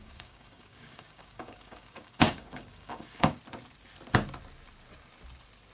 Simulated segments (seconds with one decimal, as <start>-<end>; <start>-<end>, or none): 0.0-3.4